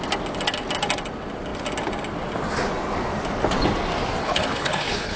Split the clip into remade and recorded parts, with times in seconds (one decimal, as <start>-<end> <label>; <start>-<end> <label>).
0.0-4.2 recorded; 4.2-5.2 remade